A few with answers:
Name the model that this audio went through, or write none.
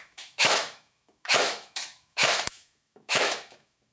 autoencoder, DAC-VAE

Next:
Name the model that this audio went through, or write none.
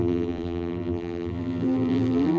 vocoder, BigVGAN v2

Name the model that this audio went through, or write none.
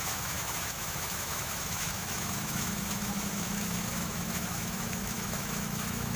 autoencoder, DAC-VAE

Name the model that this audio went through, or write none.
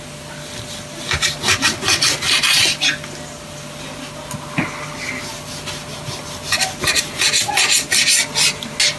none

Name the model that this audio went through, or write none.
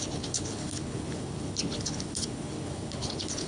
codec, HILCodec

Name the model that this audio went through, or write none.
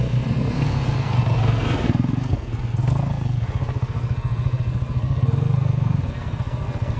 codec, SNAC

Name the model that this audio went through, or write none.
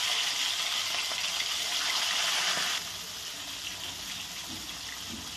none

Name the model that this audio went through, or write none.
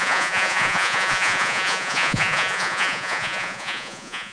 vocoder, Vocos